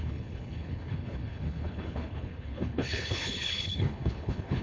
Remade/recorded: remade